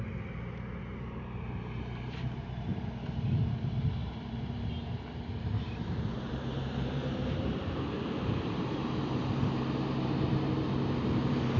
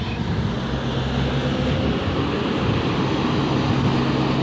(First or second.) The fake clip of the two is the first